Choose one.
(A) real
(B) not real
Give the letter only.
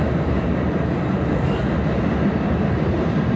A